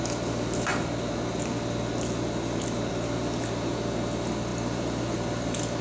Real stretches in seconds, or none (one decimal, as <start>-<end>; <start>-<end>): 0.0-5.8